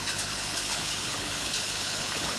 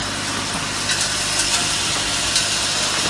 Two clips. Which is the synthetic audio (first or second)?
first